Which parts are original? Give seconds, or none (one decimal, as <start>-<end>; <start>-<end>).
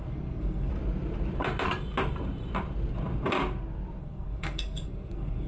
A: 0.7-4.0